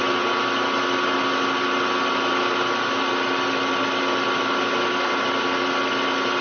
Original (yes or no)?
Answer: yes